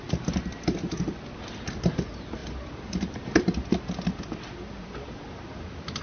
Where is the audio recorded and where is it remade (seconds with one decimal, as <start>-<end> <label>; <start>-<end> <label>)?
0.0-6.0 recorded